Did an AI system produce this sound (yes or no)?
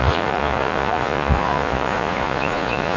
yes